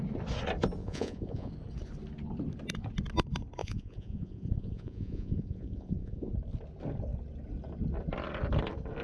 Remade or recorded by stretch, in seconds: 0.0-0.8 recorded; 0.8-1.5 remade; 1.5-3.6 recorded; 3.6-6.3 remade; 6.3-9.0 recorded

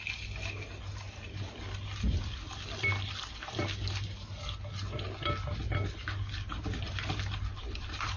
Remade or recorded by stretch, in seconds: 0.0-8.2 recorded